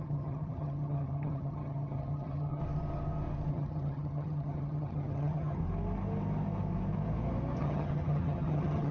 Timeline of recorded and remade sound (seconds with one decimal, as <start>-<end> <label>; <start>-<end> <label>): 0.0-2.6 remade; 2.6-3.5 recorded; 3.5-5.6 remade; 5.6-7.6 recorded; 7.6-8.9 remade